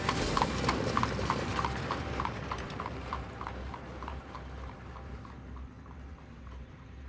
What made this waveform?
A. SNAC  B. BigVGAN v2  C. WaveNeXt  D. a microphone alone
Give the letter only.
B